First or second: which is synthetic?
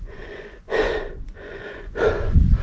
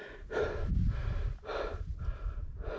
first